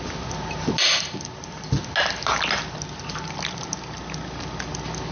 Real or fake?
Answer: real